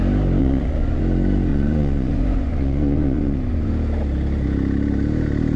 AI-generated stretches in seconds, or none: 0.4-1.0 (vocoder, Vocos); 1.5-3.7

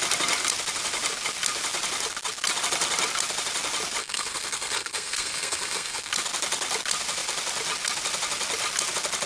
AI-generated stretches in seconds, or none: 4.0-6.1 (codec, SNAC)